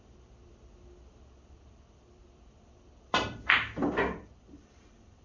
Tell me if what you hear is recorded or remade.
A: remade